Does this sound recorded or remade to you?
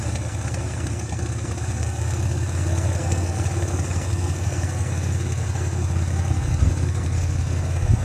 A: remade